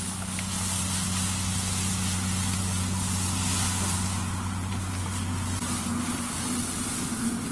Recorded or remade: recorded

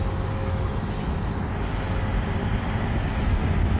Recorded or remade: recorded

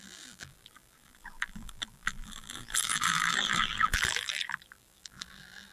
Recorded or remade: remade